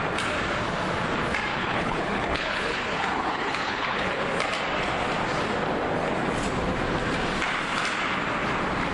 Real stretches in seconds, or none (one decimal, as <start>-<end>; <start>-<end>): 0.0-1.5; 4.2-8.9